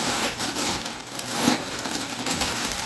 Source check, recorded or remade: remade